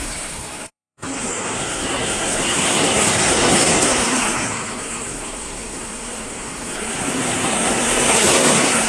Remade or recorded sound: remade